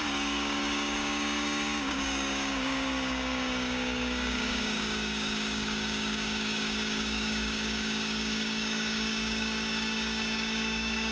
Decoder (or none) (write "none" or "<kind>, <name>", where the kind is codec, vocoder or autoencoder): codec, DAC